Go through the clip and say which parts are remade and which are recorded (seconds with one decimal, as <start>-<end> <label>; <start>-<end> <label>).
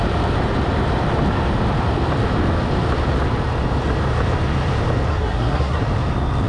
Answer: 0.0-5.1 recorded; 5.1-5.8 remade; 5.8-6.5 recorded